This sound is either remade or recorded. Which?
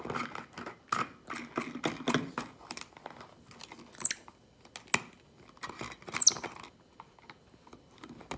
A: recorded